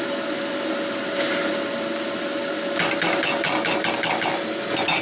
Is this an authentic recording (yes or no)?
yes